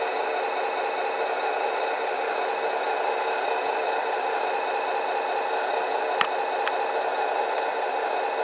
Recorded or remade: recorded